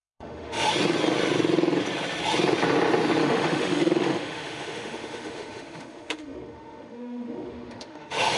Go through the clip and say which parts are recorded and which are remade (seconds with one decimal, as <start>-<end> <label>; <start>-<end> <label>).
0.0-0.7 remade; 0.7-3.2 recorded; 3.2-8.4 remade